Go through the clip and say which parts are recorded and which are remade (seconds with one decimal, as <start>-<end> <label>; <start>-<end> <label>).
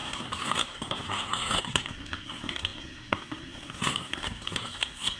0.0-5.2 remade